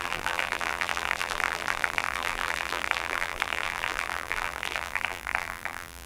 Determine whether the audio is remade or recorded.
remade